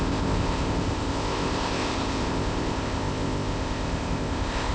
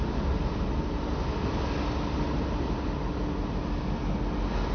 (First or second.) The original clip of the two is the second